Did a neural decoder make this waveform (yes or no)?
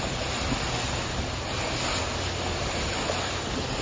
no